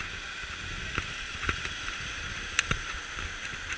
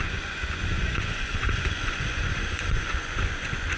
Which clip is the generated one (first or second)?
second